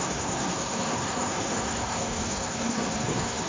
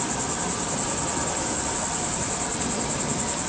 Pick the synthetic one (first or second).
first